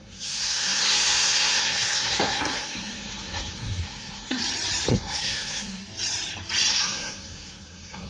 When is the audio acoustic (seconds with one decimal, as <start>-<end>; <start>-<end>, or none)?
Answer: 4.4-4.9; 5.8-6.7